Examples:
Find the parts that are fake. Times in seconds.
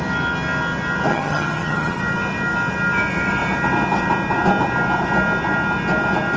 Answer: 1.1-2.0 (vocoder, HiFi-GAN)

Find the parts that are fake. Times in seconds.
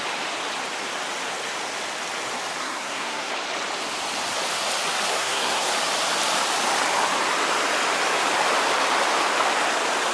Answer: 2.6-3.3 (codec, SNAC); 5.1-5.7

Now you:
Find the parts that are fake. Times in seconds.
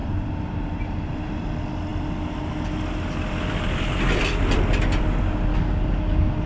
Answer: 5.5-6.5 (codec, DAC)